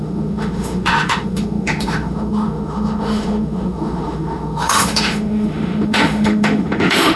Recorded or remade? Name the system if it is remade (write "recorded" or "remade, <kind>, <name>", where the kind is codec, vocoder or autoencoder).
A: remade, autoencoder, DAC-VAE